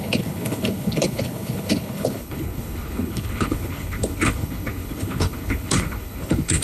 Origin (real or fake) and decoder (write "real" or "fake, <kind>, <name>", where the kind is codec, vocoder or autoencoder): fake, codec, HILCodec